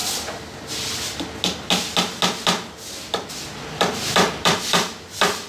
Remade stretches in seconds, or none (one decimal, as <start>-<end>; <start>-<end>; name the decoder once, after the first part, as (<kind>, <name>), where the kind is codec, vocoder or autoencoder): 3.3-5.5 (vocoder, BigVGAN v2)